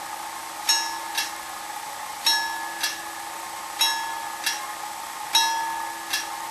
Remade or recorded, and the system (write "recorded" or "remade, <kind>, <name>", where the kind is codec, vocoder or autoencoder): recorded